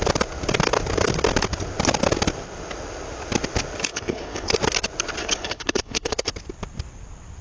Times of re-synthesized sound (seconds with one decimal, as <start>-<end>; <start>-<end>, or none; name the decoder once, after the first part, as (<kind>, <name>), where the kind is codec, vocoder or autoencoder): 3.9-4.5 (codec, HILCodec); 5.2-6.3